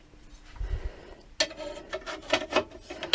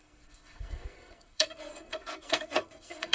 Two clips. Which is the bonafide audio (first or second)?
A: first